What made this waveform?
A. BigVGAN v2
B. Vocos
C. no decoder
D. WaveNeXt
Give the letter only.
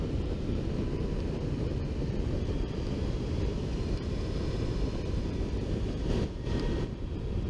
A